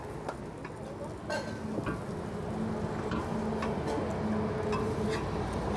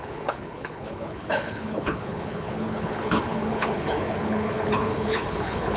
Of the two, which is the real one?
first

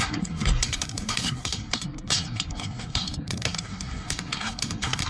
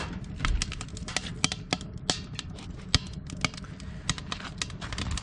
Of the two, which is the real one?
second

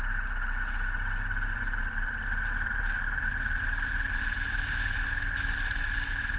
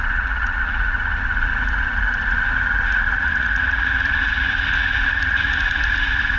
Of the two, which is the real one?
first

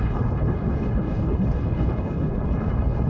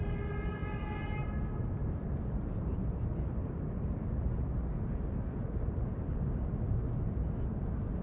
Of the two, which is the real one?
second